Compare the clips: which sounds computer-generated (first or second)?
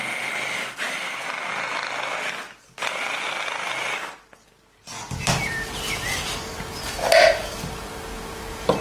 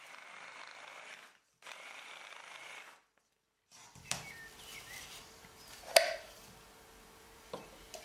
second